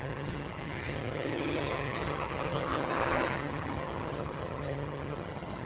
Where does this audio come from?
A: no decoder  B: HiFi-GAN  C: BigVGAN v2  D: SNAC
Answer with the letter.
B